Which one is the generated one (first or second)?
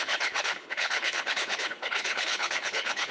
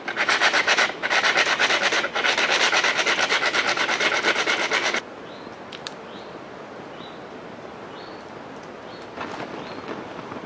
first